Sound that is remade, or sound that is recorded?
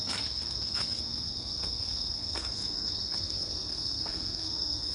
remade